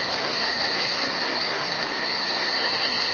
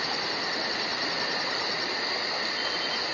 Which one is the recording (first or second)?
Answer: second